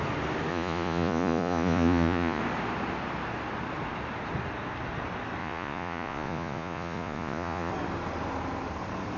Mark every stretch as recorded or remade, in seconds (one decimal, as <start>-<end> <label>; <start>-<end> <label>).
0.0-0.5 recorded; 0.5-2.4 remade; 2.4-5.4 recorded; 5.4-7.7 remade; 7.7-9.2 recorded